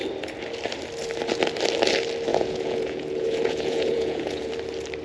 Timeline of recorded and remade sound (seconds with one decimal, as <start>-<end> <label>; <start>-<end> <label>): 0.0-2.3 recorded; 2.3-4.5 remade; 4.5-5.0 recorded